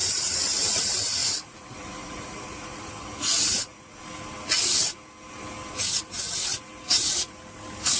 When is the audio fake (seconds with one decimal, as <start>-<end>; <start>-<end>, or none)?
0.0-0.7; 1.2-4.0